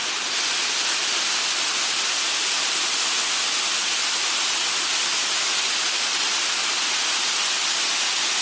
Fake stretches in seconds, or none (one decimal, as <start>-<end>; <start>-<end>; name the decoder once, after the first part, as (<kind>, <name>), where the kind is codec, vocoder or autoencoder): 3.8-6.9 (vocoder, BigVGAN v2)